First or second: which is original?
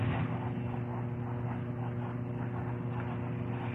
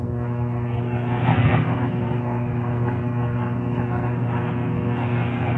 first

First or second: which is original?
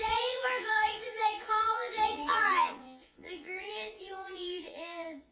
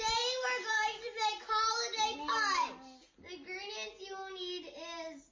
second